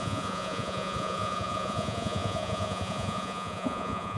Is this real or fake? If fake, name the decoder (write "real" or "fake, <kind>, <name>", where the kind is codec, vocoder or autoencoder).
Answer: fake, vocoder, Vocos